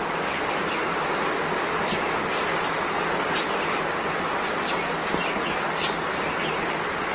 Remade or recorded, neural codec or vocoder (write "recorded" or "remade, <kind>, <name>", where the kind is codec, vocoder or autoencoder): recorded